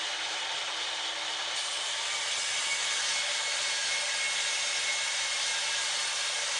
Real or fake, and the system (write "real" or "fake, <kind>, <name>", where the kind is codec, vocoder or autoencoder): real